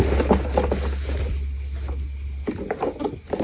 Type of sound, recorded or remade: recorded